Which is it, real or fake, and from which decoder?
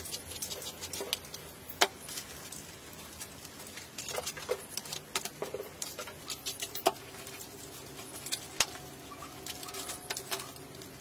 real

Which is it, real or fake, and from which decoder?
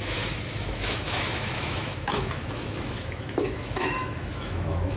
fake, autoencoder, DAC-VAE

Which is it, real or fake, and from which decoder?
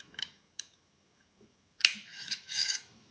fake, autoencoder, DAC-VAE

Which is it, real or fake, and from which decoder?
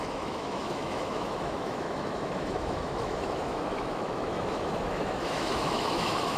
fake, autoencoder, DAC-VAE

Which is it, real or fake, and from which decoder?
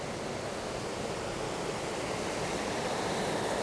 real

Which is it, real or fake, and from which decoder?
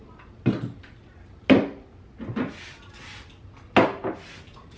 real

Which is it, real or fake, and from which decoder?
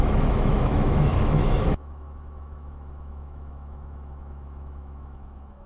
fake, autoencoder, DAC-VAE